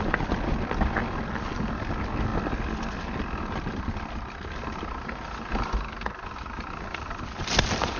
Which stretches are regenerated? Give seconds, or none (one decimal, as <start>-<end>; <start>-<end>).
none